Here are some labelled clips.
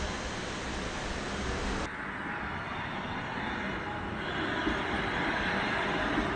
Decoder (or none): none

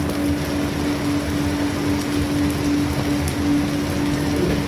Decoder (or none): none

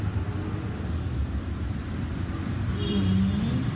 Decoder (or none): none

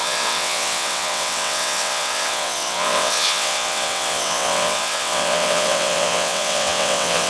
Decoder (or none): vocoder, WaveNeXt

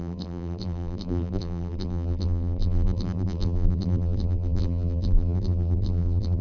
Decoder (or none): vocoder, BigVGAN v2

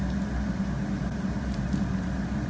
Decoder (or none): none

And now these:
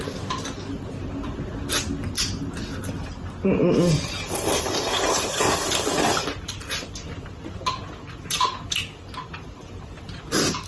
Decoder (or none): none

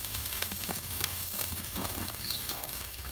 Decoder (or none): codec, DAC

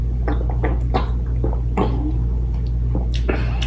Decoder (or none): none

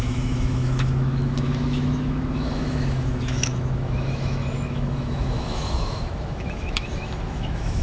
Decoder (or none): autoencoder, DAC-VAE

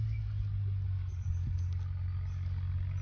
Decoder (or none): none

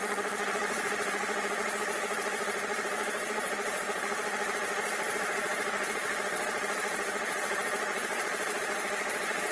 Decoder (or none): vocoder, Vocos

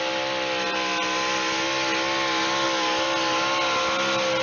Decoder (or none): none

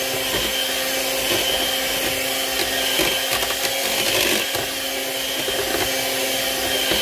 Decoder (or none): none